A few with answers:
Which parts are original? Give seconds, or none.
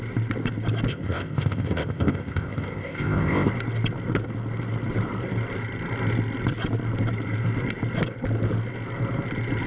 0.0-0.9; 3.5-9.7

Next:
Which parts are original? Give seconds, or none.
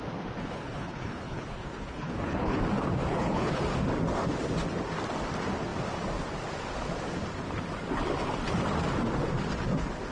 0.0-0.4; 2.6-3.1; 3.6-10.1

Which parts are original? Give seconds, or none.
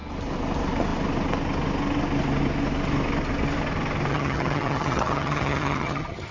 0.0-4.1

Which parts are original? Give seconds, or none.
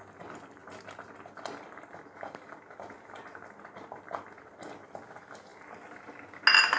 0.0-6.8